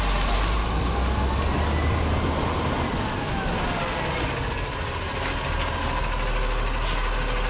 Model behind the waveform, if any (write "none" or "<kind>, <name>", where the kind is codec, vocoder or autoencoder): none